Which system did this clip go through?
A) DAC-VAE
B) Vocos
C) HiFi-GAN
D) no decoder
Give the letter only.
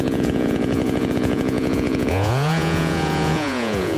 B